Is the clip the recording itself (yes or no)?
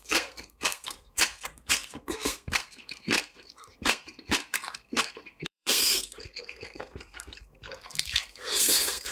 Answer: no